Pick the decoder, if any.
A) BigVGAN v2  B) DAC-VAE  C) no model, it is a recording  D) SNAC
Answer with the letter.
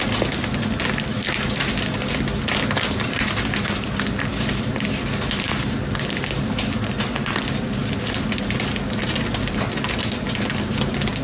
C